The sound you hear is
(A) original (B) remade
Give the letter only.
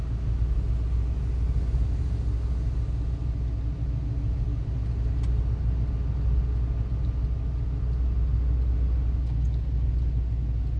A